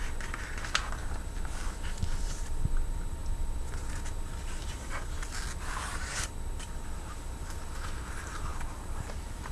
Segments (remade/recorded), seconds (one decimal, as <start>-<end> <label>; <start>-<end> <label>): 0.0-8.5 recorded; 8.5-9.5 remade